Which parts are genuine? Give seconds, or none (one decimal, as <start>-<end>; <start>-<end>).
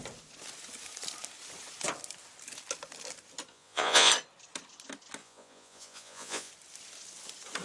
0.0-3.5; 4.1-5.2; 6.5-7.6